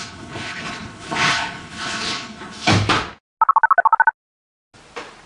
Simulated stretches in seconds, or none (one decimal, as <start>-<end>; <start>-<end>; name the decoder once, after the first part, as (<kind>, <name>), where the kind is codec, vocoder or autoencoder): 0.0-2.7 (codec, HILCodec)